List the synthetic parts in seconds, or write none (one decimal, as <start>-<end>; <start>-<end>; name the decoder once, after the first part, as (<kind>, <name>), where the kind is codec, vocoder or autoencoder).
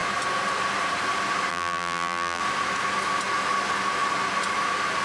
1.5-2.4 (vocoder, BigVGAN v2)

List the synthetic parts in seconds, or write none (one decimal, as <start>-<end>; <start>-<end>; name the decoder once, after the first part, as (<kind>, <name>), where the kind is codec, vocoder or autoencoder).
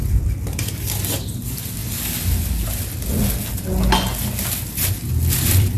0.0-1.8 (vocoder, BigVGAN v2); 5.3-5.8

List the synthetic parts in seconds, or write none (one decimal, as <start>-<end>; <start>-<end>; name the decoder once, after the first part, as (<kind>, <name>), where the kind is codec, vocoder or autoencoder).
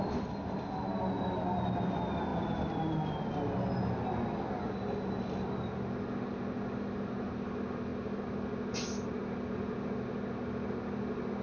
none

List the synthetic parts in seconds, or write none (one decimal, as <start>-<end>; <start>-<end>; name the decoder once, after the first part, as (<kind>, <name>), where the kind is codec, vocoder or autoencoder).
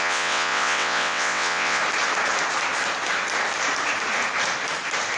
0.0-1.8 (vocoder, WaveNeXt)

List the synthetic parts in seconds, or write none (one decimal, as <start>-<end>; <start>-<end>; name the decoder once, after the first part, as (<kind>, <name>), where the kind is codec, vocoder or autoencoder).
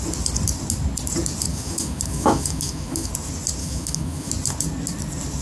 1.5-3.1 (autoencoder, DAC-VAE); 3.6-4.3